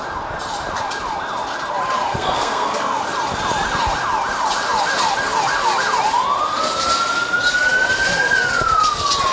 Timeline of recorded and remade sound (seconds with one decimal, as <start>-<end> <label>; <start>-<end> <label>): 0.0-2.1 recorded; 2.1-3.0 remade; 3.0-9.3 recorded